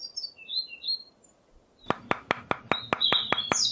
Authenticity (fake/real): real